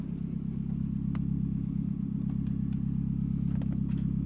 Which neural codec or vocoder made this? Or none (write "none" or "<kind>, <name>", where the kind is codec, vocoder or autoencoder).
none